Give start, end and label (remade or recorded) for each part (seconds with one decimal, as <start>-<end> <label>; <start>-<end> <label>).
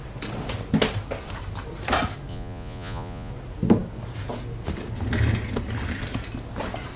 0.0-2.3 recorded; 2.3-3.3 remade; 3.3-7.0 recorded